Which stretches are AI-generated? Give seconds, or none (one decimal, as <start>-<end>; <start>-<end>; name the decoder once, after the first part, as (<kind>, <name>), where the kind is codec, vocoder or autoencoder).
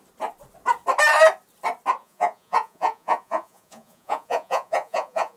2.0-5.4 (vocoder, Vocos)